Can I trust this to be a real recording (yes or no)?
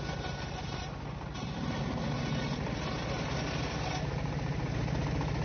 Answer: yes